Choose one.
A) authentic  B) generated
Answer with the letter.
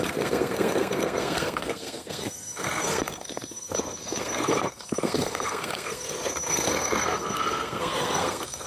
B